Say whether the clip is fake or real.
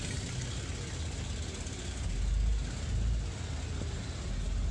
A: real